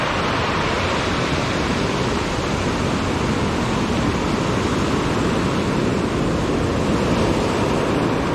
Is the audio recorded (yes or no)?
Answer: yes